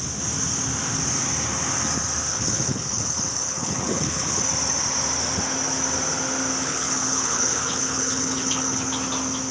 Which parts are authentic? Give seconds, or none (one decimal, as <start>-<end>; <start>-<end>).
0.0-2.3; 4.4-6.6; 8.9-9.5